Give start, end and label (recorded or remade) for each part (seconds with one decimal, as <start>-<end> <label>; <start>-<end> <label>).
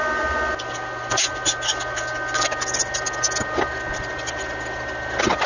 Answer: 0.0-5.5 recorded